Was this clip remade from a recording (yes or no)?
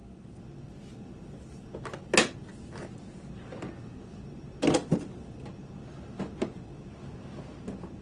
no